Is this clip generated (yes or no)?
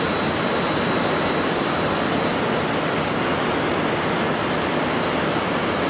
no